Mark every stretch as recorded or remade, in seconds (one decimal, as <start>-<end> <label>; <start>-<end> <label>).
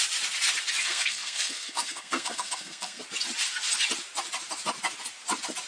0.0-0.8 recorded; 0.8-3.0 remade; 3.0-5.7 recorded